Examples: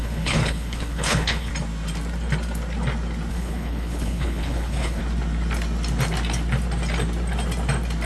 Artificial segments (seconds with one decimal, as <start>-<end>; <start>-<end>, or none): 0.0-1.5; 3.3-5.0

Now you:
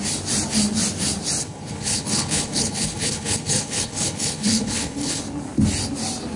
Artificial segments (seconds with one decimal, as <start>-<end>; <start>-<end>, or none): 1.4-5.2

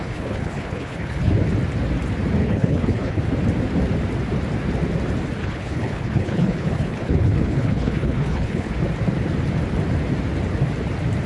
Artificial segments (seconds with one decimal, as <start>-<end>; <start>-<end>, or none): 0.0-1.3; 2.4-3.2; 5.4-8.7

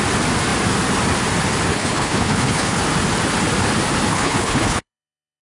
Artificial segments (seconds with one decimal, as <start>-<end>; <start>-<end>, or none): 1.7-2.8; 4.1-5.4

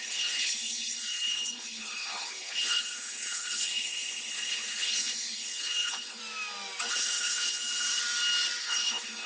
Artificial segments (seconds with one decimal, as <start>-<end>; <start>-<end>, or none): 0.0-6.2; 6.9-7.6; 8.6-9.3